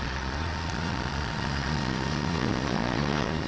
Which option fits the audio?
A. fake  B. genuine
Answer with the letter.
A